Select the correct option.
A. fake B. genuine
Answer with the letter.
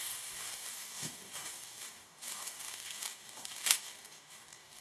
A